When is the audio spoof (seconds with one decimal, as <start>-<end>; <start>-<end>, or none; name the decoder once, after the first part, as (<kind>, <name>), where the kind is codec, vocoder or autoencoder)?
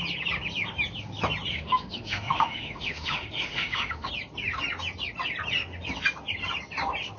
1.5-4.1 (autoencoder, DAC-VAE)